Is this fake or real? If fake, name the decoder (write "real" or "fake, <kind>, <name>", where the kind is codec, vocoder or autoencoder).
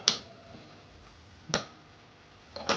real